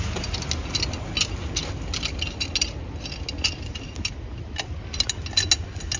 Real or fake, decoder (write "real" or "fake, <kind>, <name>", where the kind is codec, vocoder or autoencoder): real